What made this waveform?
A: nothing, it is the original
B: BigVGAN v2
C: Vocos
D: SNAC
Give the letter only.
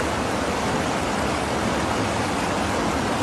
A